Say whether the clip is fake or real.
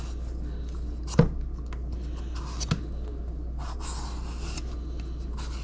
real